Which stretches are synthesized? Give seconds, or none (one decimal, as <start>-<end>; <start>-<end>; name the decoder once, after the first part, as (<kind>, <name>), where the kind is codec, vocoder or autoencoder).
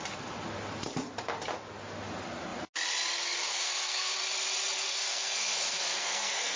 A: 3.5-4.1 (codec, SNAC); 4.9-6.6